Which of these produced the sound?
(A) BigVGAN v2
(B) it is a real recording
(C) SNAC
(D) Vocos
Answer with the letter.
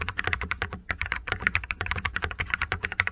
D